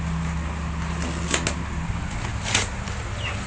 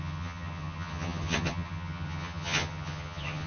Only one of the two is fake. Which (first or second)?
second